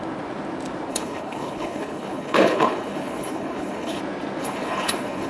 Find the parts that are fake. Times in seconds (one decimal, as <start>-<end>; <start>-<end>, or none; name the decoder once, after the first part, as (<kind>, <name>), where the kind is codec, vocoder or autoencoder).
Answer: 0.9-4.0 (codec, HILCodec); 4.4-5.3